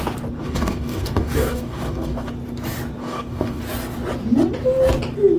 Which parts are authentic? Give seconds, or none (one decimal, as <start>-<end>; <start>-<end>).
0.0-0.4; 2.3-3.0; 3.6-5.4